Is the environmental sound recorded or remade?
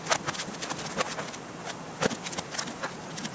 recorded